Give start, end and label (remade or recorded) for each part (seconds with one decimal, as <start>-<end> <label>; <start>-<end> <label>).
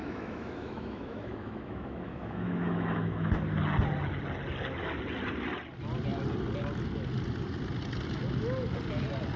0.0-3.3 remade; 3.3-9.4 recorded